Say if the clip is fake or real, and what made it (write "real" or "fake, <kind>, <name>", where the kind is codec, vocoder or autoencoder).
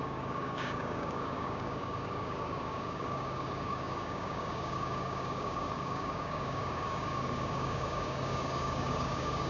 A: fake, codec, DAC